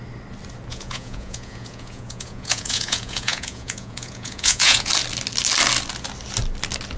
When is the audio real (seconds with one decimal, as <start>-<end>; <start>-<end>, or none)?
0.0-0.7; 4.9-7.0